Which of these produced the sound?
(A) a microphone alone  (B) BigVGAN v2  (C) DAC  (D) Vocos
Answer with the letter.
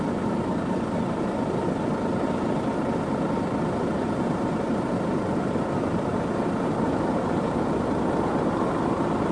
A